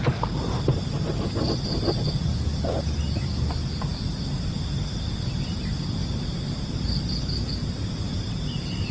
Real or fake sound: real